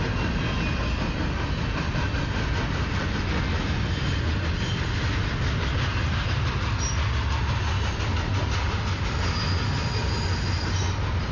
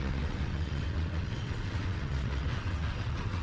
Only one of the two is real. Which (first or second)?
first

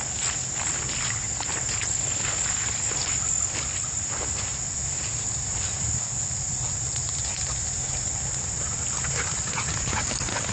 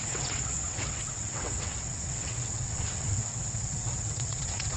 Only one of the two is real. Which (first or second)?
first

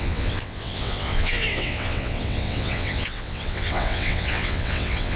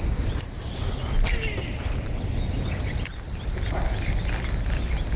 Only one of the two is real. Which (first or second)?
second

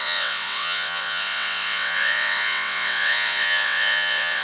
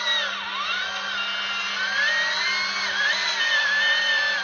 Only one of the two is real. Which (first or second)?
second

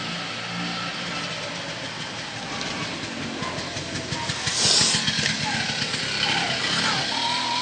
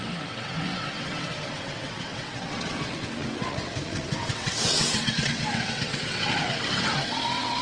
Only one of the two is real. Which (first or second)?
first